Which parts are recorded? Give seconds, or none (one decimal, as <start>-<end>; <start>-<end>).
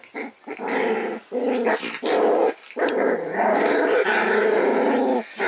0.0-5.5